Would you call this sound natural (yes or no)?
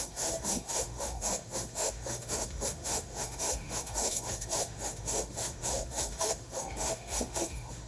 no